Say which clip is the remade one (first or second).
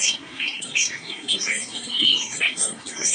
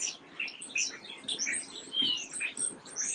first